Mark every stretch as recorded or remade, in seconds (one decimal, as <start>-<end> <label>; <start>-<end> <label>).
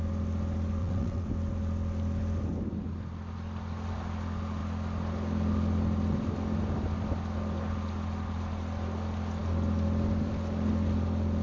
0.0-0.8 recorded; 0.8-1.3 remade; 1.3-11.4 recorded